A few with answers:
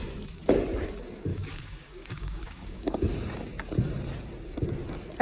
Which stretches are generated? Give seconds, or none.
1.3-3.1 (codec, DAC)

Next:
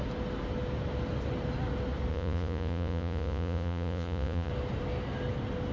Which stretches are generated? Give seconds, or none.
2.1-4.5 (vocoder, Vocos)